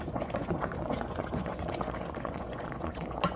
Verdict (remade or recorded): remade